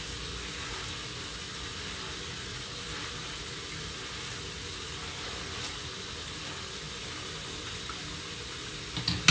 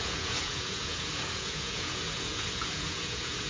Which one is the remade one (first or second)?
second